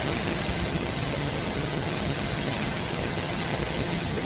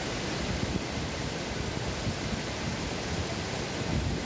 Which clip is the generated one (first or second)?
first